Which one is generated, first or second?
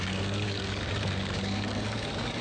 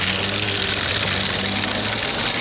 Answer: first